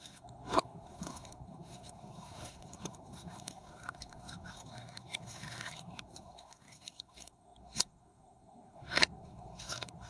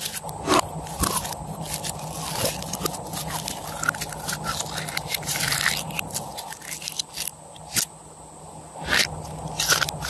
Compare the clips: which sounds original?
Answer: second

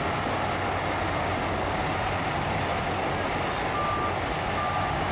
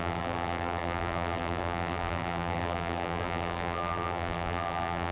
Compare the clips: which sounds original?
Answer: first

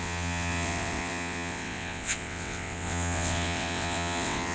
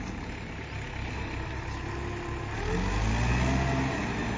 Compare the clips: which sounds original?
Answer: second